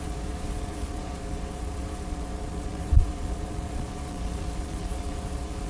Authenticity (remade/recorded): remade